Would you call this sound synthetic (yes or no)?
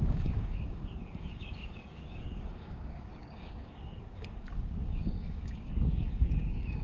yes